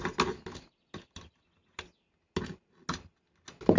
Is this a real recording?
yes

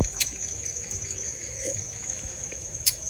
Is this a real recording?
no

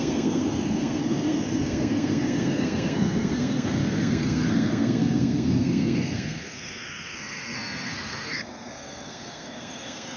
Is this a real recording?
no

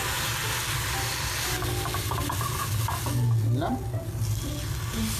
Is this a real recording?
yes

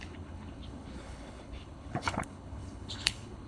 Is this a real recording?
no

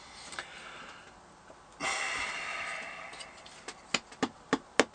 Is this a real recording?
yes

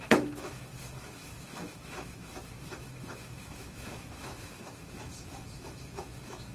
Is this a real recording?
no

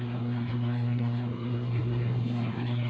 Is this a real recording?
no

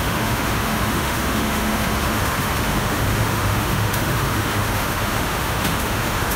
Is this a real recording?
no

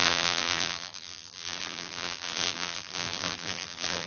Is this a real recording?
no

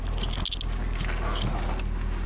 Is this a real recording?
yes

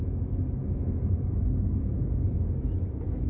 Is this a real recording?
yes